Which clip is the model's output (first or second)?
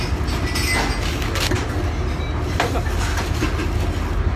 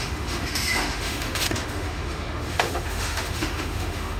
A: second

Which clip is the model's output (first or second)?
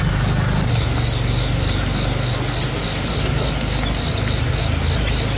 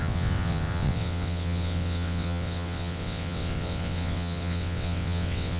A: second